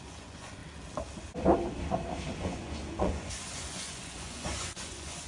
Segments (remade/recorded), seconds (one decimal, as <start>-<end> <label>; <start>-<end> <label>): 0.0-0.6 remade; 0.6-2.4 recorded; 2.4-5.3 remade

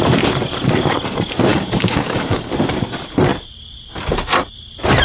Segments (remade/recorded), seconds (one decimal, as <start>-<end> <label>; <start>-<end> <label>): 0.0-1.5 recorded; 1.5-2.5 remade; 2.5-5.0 recorded

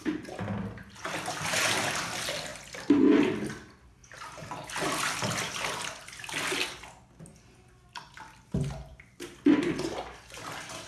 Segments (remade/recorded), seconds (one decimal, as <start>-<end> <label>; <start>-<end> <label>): 0.0-10.9 recorded

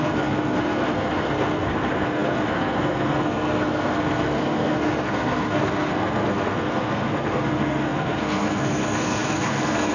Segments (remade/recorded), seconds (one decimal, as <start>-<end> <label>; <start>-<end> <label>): 0.0-9.9 remade

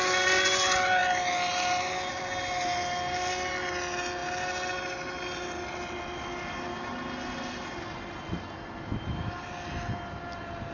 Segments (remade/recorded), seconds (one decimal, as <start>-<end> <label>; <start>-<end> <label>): 0.0-10.7 recorded

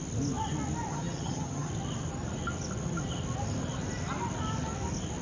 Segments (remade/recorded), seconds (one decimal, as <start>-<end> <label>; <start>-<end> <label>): 0.0-0.9 recorded; 0.9-1.7 remade; 1.7-5.2 recorded